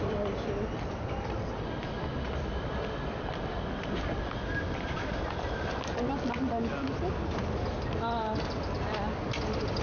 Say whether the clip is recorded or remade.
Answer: recorded